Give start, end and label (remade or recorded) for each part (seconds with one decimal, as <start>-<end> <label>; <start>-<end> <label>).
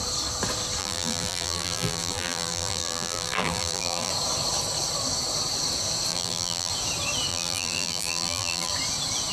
0.0-0.8 recorded; 0.8-4.1 remade; 4.1-6.1 recorded; 6.1-6.7 remade; 6.7-7.3 recorded; 7.3-8.7 remade; 8.7-9.3 recorded